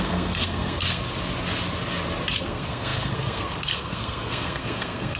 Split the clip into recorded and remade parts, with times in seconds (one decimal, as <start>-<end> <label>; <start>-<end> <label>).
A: 0.0-1.0 remade; 1.0-2.4 recorded; 2.4-5.2 remade